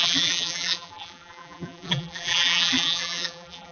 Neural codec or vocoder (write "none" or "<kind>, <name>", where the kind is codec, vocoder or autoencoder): vocoder, BigVGAN v2